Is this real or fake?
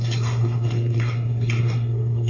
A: fake